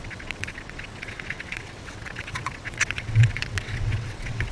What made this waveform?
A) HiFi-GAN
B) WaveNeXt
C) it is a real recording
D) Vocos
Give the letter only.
B